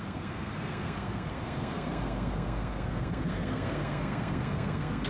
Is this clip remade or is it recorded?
remade